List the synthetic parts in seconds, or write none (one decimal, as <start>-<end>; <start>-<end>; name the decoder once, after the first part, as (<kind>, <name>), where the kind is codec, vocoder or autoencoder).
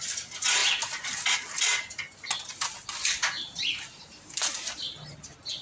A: none